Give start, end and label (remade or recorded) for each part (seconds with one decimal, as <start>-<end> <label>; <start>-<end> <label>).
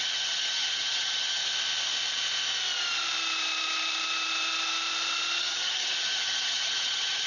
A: 0.0-1.4 remade; 1.4-5.4 recorded; 5.4-7.3 remade